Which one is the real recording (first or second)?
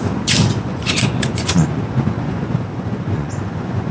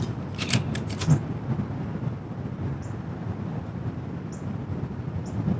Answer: second